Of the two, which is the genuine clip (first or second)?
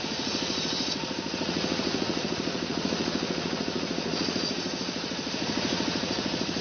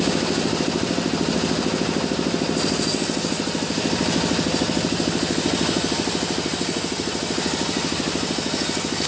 second